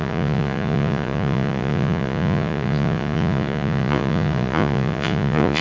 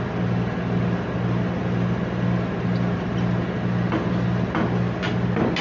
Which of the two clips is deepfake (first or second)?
first